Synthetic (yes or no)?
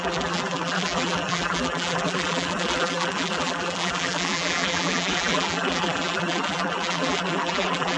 yes